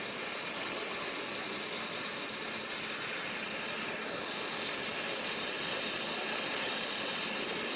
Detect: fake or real real